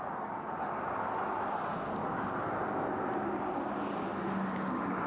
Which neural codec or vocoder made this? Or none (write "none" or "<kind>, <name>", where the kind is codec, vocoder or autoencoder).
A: none